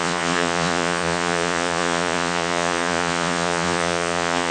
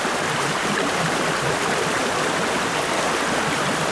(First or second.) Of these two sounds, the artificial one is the first